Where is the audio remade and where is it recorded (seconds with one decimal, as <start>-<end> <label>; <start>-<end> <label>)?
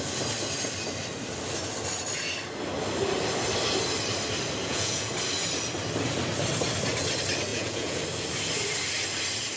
0.0-4.6 recorded; 4.6-5.1 remade; 5.1-7.5 recorded; 7.5-8.0 remade; 8.0-9.6 recorded